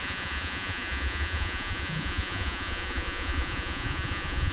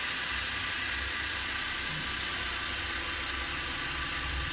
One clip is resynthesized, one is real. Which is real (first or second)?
second